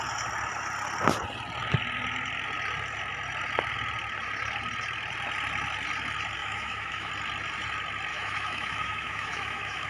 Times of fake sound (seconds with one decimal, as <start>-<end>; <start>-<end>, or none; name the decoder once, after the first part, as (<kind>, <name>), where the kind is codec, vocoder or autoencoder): 6.4-7.1 (autoencoder, DAC-VAE); 8.1-9.9